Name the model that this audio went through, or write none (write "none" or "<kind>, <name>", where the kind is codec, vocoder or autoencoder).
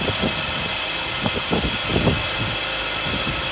none